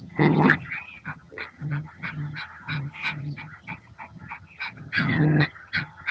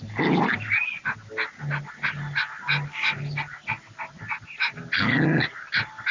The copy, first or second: first